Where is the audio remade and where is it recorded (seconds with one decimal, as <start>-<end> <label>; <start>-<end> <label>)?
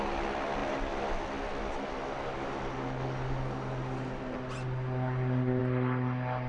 0.0-6.5 recorded